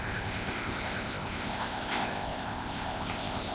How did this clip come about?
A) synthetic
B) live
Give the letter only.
A